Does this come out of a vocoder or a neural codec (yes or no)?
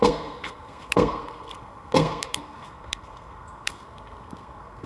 yes